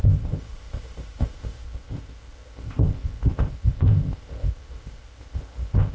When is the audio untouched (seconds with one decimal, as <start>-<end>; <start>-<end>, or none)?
none